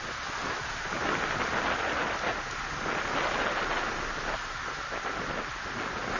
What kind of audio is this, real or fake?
real